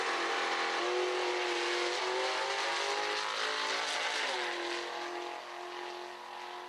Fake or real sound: real